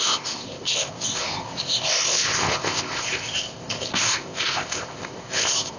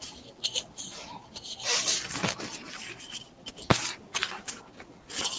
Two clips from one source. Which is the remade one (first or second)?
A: first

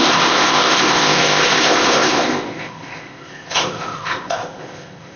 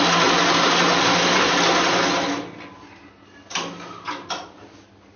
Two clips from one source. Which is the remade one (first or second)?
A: first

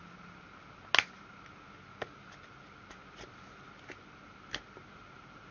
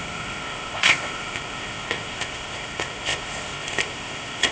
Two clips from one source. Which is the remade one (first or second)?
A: second